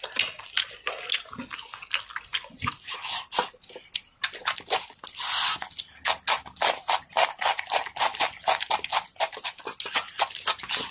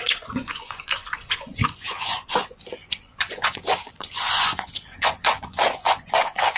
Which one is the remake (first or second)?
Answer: second